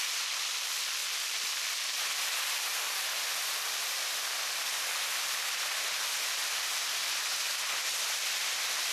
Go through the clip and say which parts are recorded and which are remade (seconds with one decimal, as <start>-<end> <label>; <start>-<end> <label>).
0.0-8.9 recorded